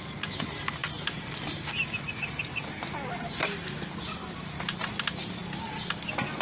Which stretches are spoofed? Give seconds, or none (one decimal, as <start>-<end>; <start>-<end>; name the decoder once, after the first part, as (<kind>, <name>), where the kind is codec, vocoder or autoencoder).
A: none

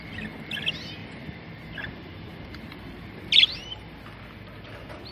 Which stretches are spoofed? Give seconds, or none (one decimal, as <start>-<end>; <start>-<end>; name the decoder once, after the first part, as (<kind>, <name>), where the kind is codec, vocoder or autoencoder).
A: 1.0-4.1 (vocoder, BigVGAN v2)

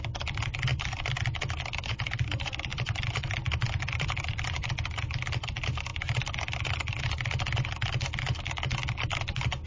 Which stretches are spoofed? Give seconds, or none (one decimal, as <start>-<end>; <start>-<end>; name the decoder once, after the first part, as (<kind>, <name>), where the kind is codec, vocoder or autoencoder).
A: 0.7-1.3 (vocoder, BigVGAN v2); 2.7-4.9; 8.8-9.7

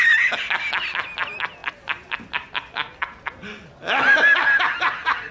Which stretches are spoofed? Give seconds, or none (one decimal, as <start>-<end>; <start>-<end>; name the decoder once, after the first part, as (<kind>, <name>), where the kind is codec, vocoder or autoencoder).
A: none

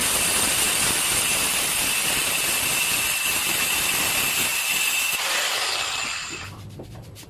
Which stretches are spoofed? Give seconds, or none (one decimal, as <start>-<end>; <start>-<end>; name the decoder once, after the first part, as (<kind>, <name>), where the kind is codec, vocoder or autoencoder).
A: 0.0-3.9 (vocoder, BigVGAN v2); 4.5-6.1